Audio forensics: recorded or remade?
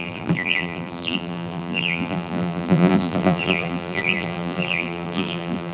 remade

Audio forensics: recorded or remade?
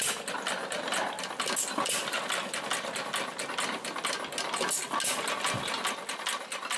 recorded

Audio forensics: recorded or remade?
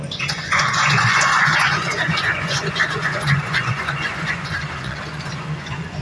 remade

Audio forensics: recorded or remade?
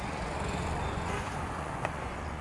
remade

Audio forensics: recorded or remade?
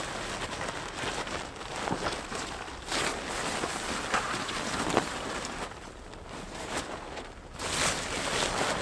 recorded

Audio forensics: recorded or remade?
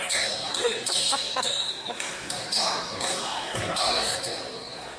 remade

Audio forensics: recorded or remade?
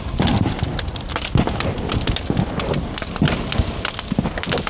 recorded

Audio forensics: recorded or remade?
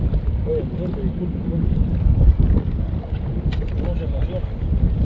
recorded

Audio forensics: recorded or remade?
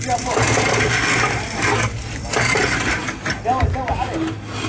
recorded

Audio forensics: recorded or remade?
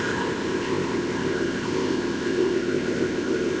remade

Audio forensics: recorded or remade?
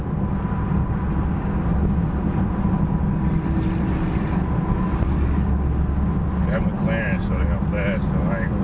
recorded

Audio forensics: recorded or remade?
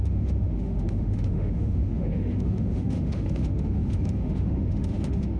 remade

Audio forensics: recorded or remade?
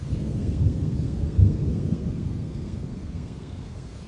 remade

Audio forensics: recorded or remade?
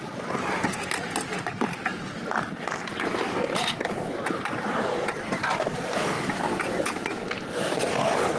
recorded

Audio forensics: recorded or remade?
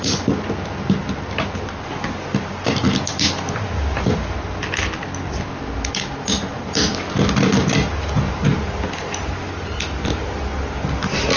recorded